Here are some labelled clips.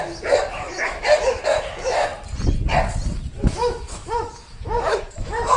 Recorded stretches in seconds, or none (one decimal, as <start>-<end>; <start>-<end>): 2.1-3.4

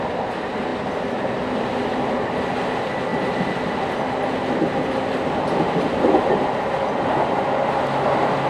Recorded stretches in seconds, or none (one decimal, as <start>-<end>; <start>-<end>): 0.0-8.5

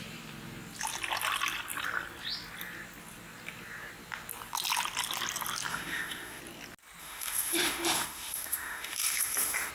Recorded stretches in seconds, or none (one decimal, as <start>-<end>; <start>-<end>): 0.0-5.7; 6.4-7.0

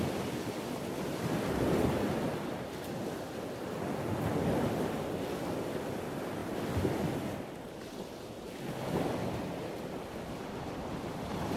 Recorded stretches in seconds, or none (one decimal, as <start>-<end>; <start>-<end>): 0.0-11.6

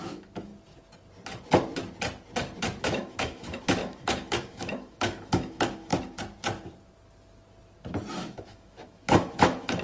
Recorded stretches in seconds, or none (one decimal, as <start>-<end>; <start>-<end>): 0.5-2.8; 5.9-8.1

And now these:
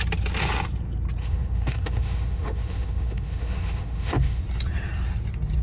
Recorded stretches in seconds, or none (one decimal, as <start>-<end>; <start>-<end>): 0.0-1.2; 4.4-5.6

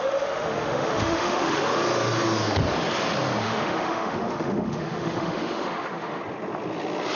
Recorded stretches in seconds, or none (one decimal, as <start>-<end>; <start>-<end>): 1.6-3.4; 6.2-7.2

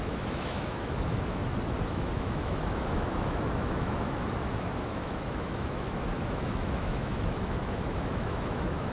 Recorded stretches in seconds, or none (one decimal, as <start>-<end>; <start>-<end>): 1.4-1.9